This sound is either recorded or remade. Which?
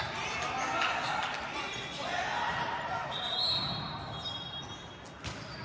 recorded